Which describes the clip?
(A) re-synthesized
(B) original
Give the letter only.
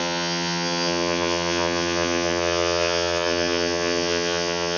A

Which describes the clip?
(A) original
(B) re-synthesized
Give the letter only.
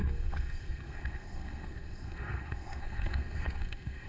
B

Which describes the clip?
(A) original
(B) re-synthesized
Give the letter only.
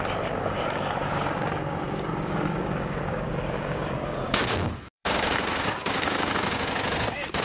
B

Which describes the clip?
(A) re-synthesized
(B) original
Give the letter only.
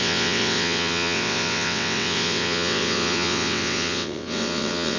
A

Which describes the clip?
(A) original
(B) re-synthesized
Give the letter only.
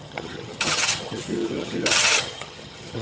B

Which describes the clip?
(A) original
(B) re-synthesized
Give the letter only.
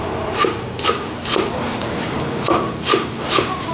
B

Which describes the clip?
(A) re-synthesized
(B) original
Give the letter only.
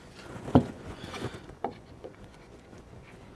A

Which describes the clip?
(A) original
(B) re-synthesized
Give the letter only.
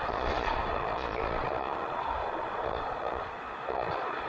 B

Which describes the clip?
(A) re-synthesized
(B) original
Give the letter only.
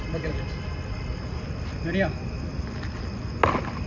B